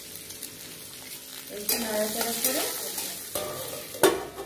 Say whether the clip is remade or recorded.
recorded